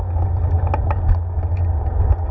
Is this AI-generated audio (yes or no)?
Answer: no